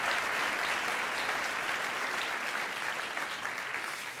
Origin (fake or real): real